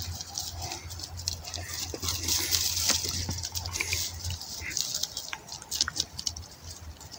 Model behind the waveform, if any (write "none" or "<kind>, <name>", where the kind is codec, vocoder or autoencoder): none